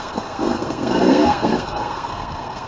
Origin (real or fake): fake